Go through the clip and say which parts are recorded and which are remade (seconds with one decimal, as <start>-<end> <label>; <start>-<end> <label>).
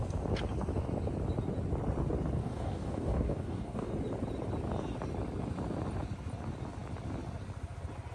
0.0-2.4 recorded; 2.4-3.9 remade; 3.9-8.1 recorded